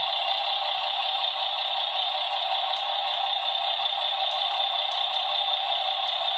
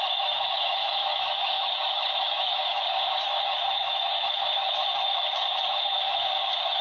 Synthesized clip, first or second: second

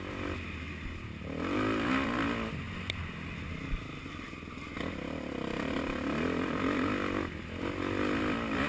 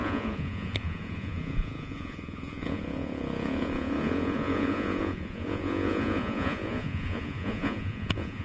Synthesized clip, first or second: second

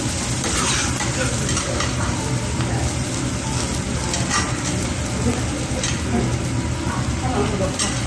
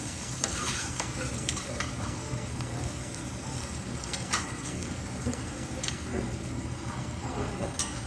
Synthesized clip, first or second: second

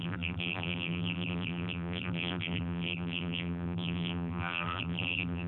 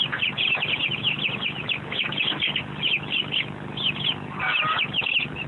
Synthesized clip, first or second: first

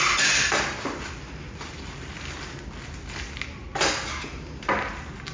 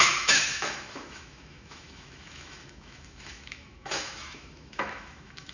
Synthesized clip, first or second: second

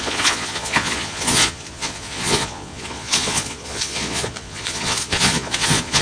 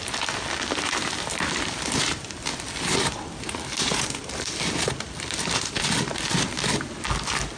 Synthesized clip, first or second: first